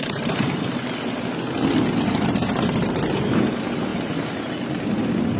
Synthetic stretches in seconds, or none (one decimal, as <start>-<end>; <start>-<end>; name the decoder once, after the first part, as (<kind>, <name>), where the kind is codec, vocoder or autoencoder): none